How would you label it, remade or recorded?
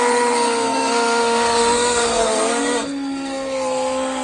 remade